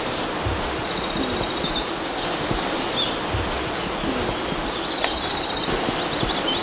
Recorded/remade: recorded